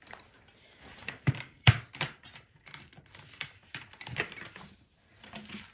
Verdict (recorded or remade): remade